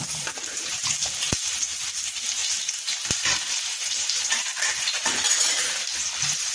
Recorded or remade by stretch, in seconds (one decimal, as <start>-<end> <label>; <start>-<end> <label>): 0.0-2.4 remade; 2.4-3.9 recorded; 3.9-6.5 remade